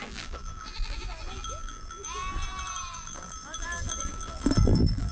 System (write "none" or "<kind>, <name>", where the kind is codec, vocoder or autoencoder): vocoder, BigVGAN v2